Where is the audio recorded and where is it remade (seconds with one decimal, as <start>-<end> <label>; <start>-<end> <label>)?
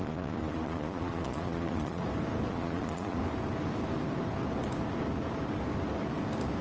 0.0-2.0 remade; 2.0-2.5 recorded; 2.5-3.2 remade; 3.2-6.6 recorded